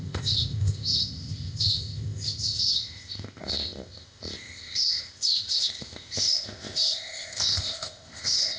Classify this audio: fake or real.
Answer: fake